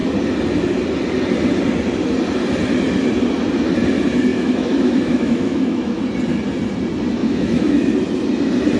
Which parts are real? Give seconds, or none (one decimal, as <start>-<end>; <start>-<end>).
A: 0.0-4.3; 6.0-7.2; 7.8-8.8